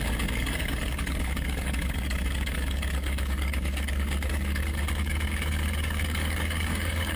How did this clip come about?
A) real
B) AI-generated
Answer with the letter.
B